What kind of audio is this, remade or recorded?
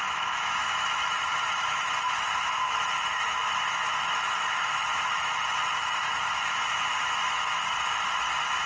remade